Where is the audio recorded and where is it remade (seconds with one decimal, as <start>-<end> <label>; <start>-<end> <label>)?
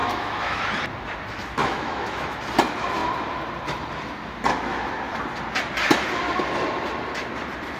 0.0-0.6 remade; 0.6-1.6 recorded; 1.6-2.4 remade; 2.4-7.8 recorded